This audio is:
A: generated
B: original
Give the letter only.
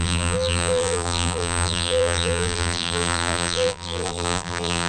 A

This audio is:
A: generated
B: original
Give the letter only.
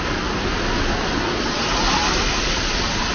B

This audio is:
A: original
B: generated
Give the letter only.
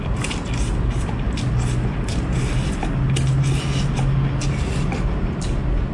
A